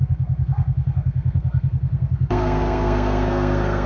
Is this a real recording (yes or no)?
no